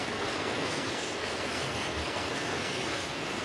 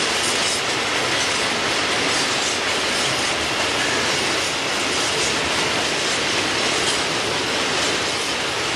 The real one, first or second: second